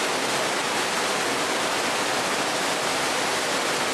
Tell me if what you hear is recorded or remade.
recorded